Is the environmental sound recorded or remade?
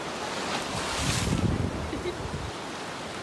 recorded